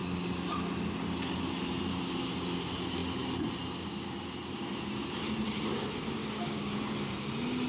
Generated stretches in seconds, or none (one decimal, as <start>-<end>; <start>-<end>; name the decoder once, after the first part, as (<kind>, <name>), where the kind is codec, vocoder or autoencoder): 6.2-6.7 (codec, DAC)

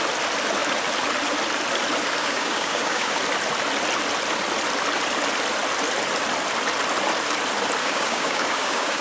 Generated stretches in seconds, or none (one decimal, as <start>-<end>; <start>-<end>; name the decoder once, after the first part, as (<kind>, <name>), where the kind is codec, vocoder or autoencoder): 2.2-3.2 (codec, DAC); 7.8-9.0

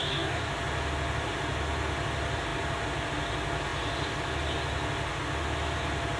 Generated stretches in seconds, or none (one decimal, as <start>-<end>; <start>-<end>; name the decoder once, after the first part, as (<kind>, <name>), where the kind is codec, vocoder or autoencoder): 0.0-0.5 (codec, DAC)